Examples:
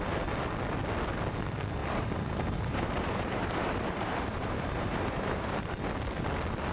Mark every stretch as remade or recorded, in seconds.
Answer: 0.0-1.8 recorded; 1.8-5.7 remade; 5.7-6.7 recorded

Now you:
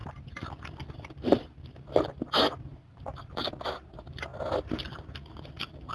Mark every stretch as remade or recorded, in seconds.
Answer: 0.0-3.5 remade; 3.5-4.3 recorded; 4.3-5.9 remade

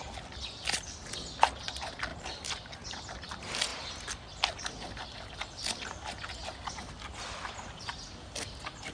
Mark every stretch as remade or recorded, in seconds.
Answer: 0.0-2.1 recorded; 2.1-3.1 remade; 3.1-8.9 recorded